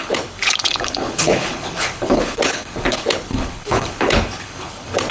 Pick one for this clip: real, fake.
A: fake